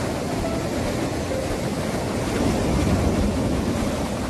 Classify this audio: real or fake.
real